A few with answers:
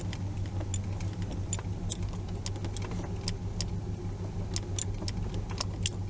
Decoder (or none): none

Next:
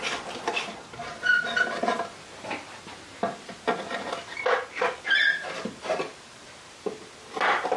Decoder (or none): none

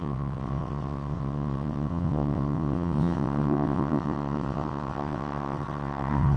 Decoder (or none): vocoder, WaveNeXt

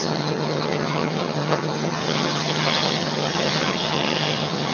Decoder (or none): vocoder, HiFi-GAN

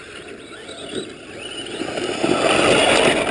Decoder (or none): none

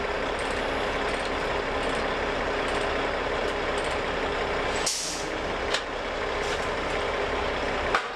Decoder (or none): none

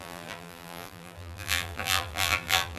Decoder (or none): vocoder, BigVGAN v2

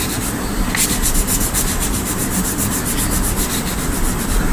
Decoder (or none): none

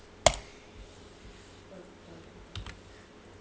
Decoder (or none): none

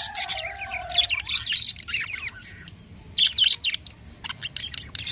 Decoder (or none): none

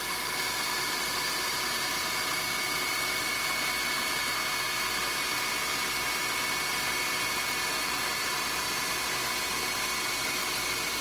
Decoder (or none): none